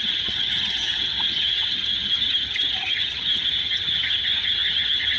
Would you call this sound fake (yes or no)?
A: yes